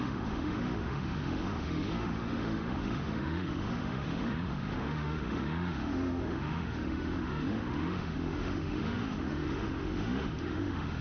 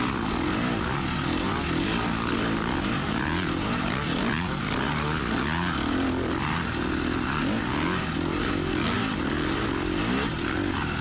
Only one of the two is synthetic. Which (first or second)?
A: first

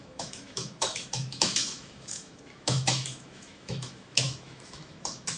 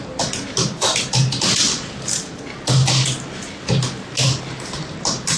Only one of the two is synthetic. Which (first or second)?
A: first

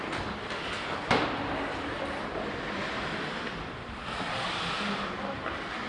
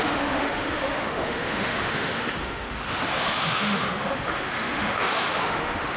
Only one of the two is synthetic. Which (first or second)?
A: second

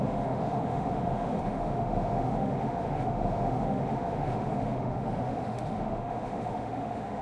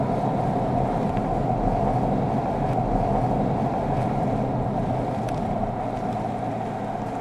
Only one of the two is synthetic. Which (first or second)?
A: first